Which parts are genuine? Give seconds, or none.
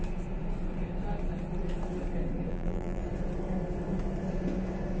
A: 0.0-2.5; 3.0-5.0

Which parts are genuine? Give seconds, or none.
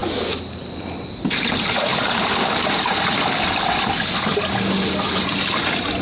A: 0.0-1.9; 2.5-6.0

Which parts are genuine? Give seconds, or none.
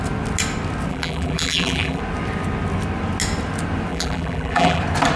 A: 0.0-0.9; 2.0-3.9; 4.8-5.2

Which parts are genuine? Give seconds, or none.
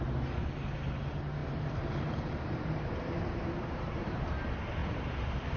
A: 0.0-1.4; 4.2-4.8